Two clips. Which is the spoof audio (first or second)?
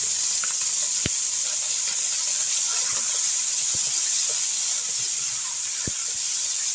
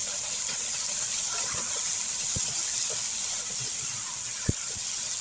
second